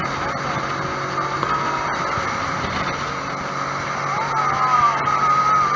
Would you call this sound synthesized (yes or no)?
no